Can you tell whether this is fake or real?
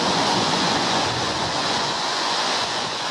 fake